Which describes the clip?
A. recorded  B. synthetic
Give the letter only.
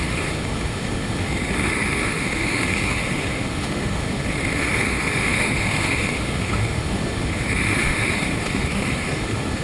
B